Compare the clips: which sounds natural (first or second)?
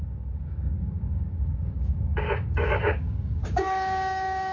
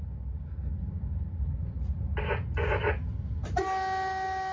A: second